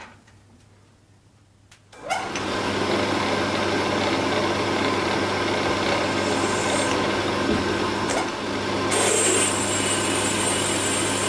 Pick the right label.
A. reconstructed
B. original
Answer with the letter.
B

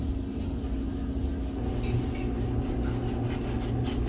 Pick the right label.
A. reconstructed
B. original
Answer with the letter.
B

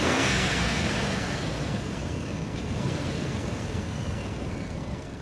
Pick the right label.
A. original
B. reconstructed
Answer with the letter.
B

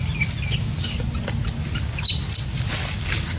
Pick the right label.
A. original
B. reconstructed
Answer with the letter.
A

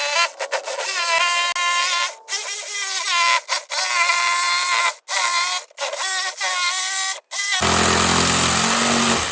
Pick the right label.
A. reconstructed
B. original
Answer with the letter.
B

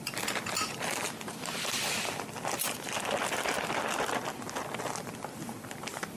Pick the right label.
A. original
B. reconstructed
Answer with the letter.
A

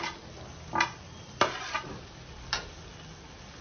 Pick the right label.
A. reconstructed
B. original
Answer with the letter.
B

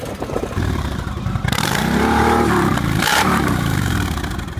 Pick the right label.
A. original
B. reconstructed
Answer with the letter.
B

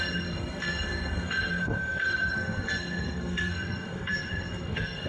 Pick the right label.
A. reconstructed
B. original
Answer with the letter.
A